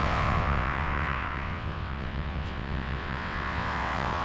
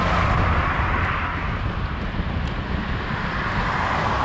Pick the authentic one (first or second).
second